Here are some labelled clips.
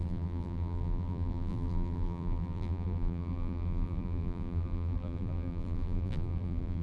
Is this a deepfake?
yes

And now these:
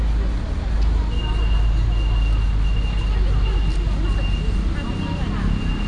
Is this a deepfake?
no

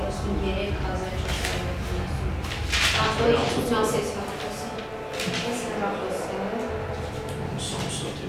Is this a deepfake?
no